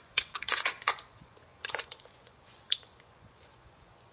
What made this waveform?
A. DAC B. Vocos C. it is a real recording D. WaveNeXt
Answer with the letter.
B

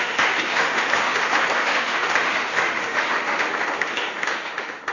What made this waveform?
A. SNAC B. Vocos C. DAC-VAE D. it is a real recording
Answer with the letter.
C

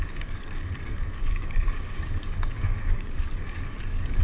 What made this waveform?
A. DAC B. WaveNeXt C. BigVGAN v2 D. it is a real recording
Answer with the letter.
A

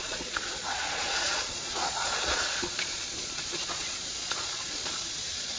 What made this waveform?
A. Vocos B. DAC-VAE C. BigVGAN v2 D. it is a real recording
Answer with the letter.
A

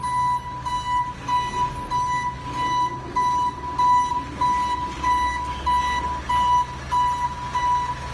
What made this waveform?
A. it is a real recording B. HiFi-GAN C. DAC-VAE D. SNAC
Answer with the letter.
A